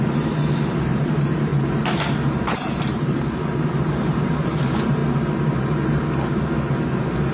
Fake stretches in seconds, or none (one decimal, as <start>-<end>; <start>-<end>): 0.0-5.0